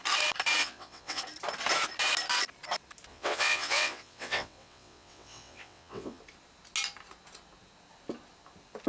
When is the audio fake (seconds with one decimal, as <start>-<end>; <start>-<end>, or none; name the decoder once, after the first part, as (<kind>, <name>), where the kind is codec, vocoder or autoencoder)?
0.6-1.2 (vocoder, WaveNeXt); 3.1-6.2